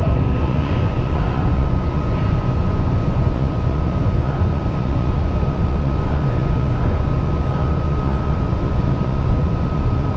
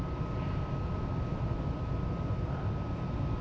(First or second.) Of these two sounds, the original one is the second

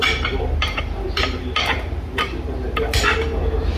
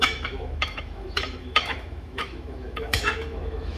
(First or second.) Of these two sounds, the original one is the first